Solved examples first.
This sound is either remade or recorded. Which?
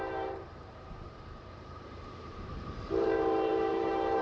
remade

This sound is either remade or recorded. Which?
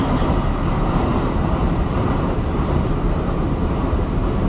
remade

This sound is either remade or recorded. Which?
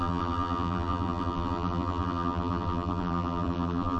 remade